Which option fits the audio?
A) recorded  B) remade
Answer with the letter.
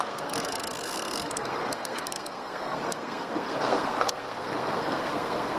B